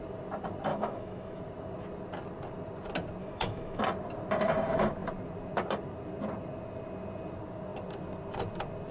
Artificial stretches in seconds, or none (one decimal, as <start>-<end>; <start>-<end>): 0.7-1.4; 3.2-3.8